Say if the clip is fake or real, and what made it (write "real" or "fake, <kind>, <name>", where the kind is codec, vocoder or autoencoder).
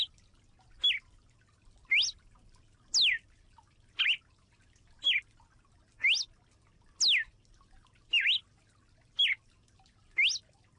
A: real